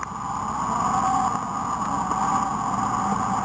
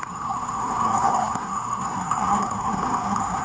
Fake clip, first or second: second